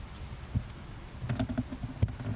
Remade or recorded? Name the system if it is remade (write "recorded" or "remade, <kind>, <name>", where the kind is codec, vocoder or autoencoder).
recorded